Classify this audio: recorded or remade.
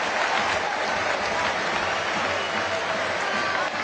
recorded